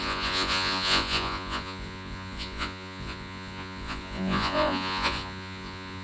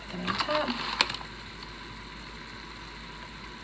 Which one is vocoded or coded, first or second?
first